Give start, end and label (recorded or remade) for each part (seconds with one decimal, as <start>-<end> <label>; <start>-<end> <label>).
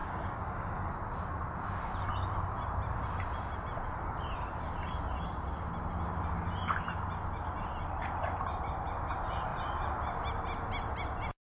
0.0-0.9 remade; 0.9-11.4 recorded